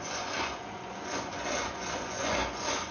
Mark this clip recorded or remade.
remade